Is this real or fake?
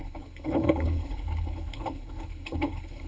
fake